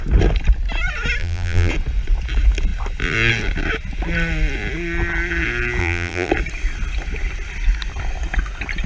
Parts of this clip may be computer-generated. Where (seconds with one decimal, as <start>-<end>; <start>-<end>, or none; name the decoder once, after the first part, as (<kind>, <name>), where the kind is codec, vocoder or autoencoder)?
1.2-1.7 (vocoder, BigVGAN v2); 5.8-6.3